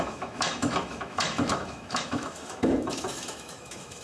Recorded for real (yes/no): no